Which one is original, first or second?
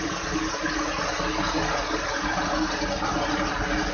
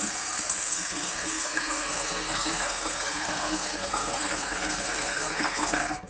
first